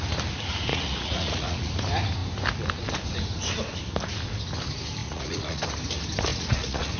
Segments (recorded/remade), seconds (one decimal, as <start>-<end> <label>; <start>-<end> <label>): 0.0-0.7 recorded; 0.7-1.7 remade; 1.7-5.0 recorded; 5.0-5.6 remade; 5.6-6.3 recorded; 6.3-7.0 remade